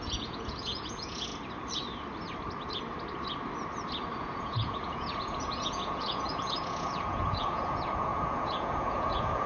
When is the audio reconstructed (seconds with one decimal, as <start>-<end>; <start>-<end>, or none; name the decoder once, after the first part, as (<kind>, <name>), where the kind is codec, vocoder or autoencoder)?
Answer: 0.0-1.3 (vocoder, Vocos); 4.2-9.5